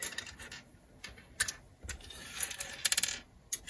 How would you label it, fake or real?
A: real